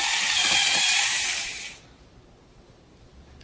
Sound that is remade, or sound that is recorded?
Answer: recorded